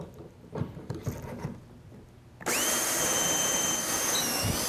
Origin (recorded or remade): recorded